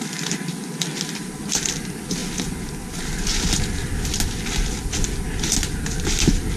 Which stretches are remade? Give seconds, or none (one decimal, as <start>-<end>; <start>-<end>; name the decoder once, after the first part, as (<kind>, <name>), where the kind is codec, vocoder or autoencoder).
none